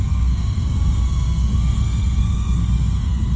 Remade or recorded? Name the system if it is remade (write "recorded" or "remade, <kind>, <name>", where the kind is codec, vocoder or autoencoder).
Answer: remade, codec, SNAC